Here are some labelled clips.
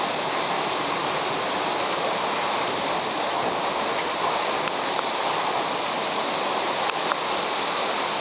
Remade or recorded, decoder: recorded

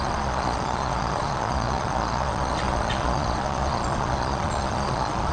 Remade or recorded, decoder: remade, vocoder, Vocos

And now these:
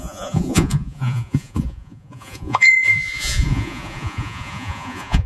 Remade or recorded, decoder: remade, vocoder, Vocos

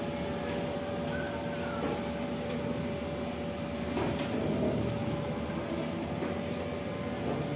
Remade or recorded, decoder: recorded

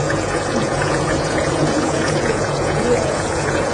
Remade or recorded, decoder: remade, vocoder, Vocos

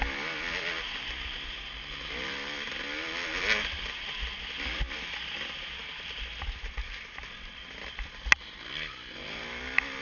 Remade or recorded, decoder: recorded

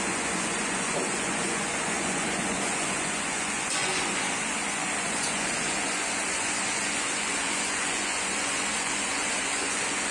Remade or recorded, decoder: remade, vocoder, Vocos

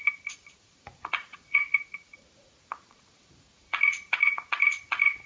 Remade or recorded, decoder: remade, vocoder, Vocos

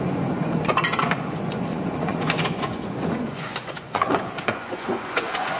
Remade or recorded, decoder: remade, vocoder, Vocos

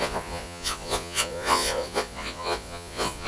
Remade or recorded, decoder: remade, vocoder, Vocos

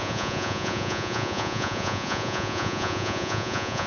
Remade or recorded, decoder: remade, vocoder, Vocos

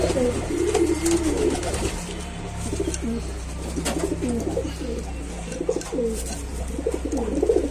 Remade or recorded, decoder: recorded